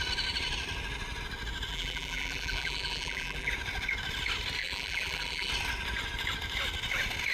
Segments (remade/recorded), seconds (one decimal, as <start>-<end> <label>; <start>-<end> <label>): 0.0-1.7 recorded; 1.7-3.5 remade; 3.5-4.6 recorded; 4.6-5.5 remade; 5.5-7.3 recorded